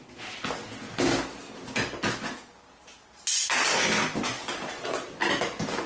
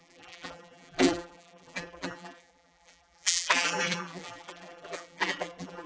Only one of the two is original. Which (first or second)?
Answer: first